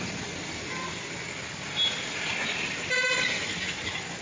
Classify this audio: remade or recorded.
recorded